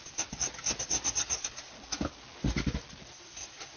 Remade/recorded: recorded